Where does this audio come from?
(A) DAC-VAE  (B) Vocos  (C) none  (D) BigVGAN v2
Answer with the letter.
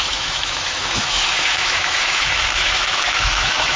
A